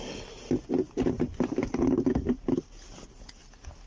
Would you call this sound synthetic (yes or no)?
no